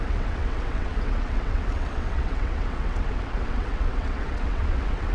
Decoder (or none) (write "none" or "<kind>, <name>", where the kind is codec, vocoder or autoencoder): vocoder, WaveNeXt